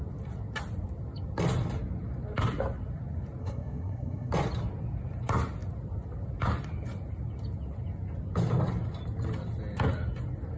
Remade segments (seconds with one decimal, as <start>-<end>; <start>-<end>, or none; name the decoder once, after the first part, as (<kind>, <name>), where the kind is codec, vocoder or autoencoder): 3.4-4.3 (codec, SNAC)